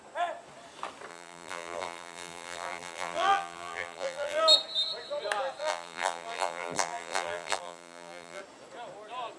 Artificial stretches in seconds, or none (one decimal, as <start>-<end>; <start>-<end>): 1.1-4.4; 5.6-8.4